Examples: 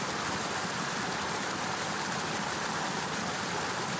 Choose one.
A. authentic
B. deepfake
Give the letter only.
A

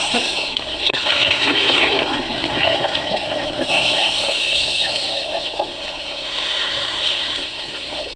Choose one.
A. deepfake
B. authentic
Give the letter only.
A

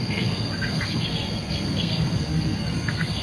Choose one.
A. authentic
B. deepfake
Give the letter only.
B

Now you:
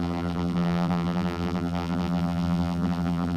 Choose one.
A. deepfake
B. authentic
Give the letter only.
A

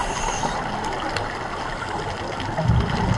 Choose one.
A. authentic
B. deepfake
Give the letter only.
A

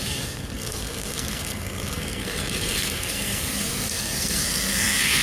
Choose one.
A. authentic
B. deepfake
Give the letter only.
B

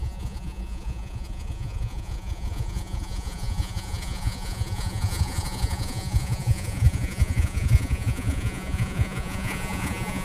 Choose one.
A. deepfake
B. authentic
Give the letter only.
A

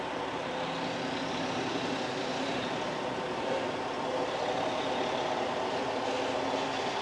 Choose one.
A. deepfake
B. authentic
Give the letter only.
B